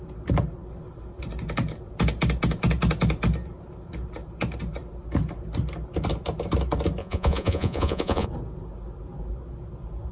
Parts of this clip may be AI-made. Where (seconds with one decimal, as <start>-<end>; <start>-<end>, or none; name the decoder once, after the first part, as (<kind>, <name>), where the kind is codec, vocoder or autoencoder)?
7.0-8.3 (vocoder, Vocos)